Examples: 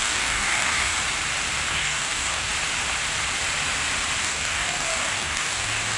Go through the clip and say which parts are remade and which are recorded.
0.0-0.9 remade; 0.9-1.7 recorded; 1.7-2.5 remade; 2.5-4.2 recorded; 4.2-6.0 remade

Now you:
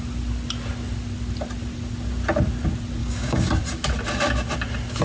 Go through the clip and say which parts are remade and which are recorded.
0.0-3.0 recorded; 3.0-3.6 remade; 3.6-5.0 recorded